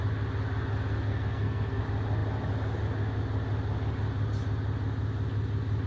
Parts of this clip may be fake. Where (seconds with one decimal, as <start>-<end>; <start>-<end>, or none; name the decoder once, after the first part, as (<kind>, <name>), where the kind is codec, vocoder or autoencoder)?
0.9-1.8 (codec, SNAC)